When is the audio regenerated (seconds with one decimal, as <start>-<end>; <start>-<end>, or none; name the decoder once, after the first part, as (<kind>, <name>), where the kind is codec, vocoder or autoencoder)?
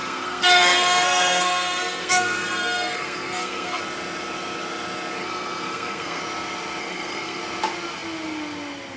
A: 0.0-3.8 (codec, SNAC); 5.2-6.2; 6.8-7.4